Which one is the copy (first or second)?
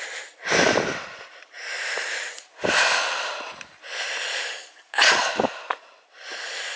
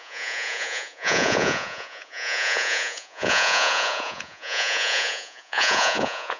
second